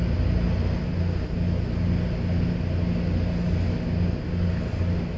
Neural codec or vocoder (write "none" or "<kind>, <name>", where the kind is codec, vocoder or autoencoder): none